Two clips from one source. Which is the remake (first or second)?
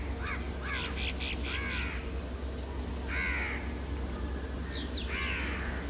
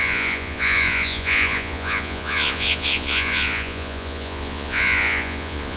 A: second